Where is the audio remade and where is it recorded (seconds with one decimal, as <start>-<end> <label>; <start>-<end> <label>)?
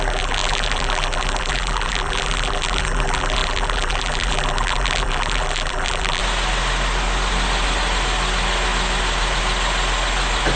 0.0-6.2 remade; 6.2-10.6 recorded